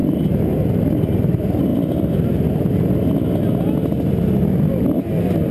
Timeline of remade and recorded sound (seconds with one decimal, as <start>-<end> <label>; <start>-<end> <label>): 0.0-1.7 remade; 1.7-5.0 recorded; 5.0-5.5 remade